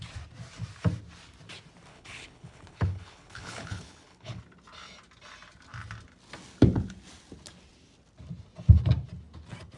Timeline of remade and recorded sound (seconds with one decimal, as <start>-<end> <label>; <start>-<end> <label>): 0.0-1.9 recorded; 1.9-4.4 remade; 4.4-9.8 recorded